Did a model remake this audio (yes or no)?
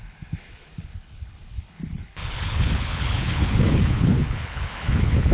yes